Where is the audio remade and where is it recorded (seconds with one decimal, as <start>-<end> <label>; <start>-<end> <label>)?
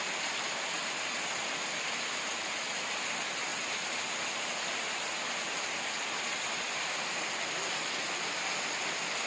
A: 0.0-9.3 recorded